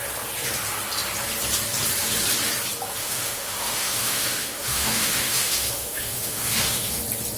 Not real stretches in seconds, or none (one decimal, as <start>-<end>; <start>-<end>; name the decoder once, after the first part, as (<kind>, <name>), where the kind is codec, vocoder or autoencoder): 3.0-7.0 (autoencoder, DAC-VAE)